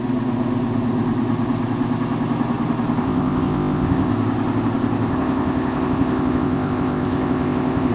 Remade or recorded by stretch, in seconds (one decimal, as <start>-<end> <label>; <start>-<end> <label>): 0.0-3.0 recorded; 3.0-4.1 remade; 4.1-5.1 recorded; 5.1-7.9 remade